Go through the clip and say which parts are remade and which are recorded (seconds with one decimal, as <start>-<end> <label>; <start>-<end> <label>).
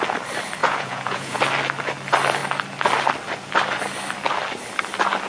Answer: 0.0-0.6 recorded; 0.6-1.4 remade; 1.4-5.3 recorded